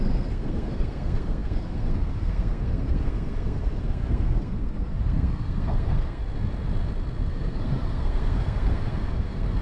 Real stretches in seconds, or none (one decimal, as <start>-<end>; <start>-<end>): 6.2-7.3